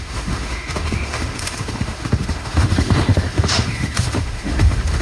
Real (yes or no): no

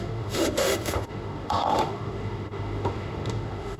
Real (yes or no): no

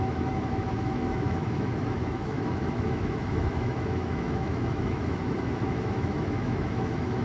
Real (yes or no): no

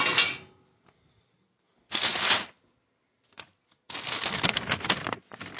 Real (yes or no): yes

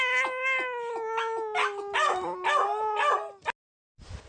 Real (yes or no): yes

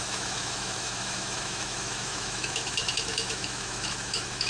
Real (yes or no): no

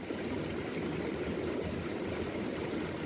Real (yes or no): yes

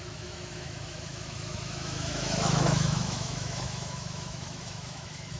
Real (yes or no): no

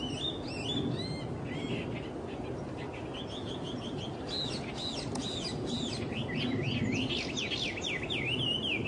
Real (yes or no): yes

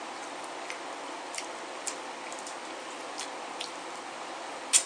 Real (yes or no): yes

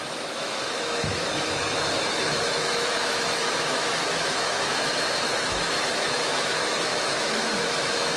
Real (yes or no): no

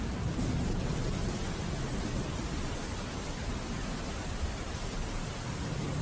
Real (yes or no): yes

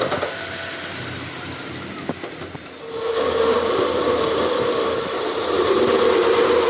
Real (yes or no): yes